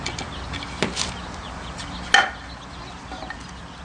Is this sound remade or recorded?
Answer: recorded